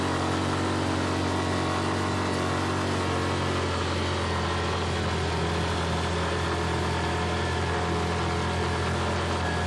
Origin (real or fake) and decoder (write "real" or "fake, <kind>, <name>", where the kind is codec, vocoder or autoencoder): real